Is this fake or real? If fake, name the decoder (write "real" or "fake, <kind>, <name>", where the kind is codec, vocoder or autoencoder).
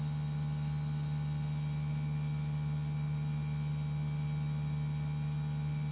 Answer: real